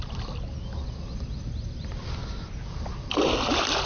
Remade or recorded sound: recorded